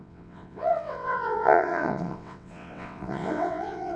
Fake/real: fake